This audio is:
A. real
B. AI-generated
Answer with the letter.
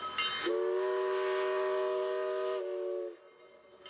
A